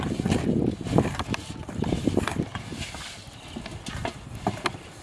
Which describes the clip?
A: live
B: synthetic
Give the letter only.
A